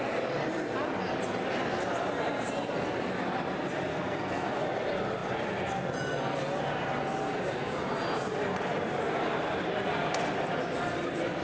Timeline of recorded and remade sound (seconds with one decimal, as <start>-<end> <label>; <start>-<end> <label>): 0.0-3.9 recorded; 3.9-4.5 remade; 4.5-11.4 recorded